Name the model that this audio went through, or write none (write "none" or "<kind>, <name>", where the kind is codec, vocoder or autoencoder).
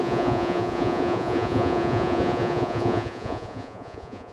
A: vocoder, Vocos